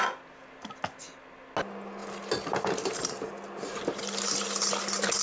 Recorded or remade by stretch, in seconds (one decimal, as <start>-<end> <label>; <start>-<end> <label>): 0.0-5.2 recorded

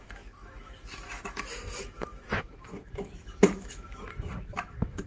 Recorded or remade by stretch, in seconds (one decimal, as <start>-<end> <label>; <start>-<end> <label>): 0.0-5.1 remade

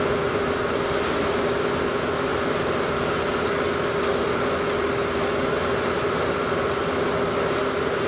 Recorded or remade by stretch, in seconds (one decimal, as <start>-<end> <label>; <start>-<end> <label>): 0.0-8.1 recorded

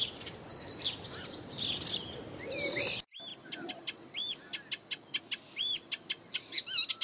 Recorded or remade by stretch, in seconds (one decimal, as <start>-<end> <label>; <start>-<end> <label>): 0.0-7.0 recorded

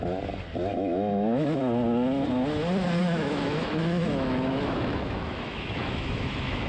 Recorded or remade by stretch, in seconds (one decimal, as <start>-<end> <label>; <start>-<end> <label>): 0.0-0.7 recorded; 0.7-1.6 remade; 1.6-3.0 recorded; 3.0-6.7 remade